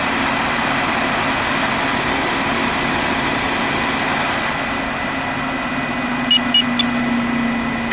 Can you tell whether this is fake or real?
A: real